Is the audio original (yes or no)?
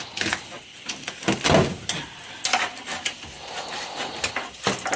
yes